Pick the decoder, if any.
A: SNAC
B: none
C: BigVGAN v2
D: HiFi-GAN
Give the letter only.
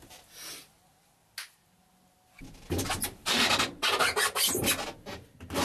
B